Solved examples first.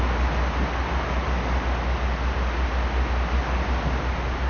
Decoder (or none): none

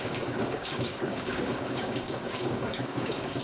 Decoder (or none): codec, DAC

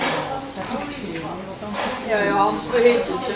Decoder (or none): none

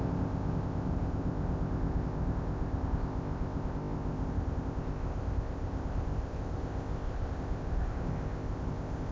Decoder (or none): codec, ZipCodec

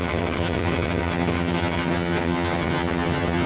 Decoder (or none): vocoder, HiFi-GAN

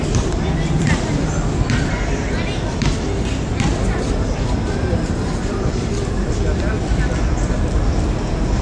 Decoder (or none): vocoder, BigVGAN v2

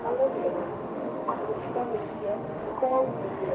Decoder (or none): autoencoder, DAC-VAE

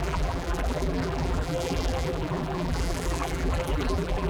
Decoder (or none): vocoder, BigVGAN v2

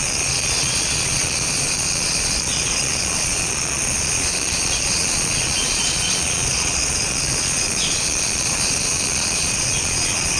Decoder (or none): vocoder, Vocos